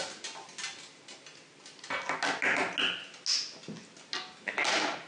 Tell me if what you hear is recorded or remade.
recorded